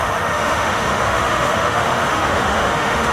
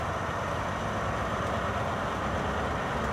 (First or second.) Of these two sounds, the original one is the second